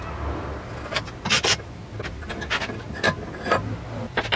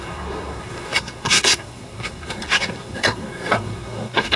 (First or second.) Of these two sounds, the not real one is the second